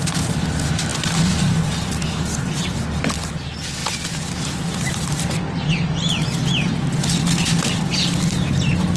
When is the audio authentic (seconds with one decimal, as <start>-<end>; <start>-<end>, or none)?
0.0-3.8; 5.7-9.0